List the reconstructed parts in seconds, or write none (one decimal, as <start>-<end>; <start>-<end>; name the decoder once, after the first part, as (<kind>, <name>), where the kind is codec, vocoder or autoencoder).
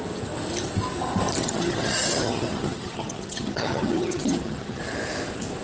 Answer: 1.4-4.8 (vocoder, HiFi-GAN)